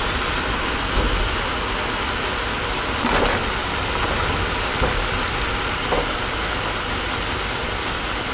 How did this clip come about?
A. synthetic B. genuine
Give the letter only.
B